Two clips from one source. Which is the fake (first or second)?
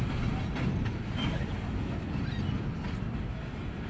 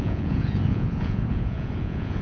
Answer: second